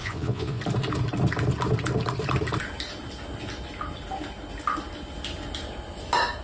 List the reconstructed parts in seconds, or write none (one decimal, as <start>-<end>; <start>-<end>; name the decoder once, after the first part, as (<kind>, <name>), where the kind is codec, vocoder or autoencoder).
0.0-0.6 (vocoder, Vocos)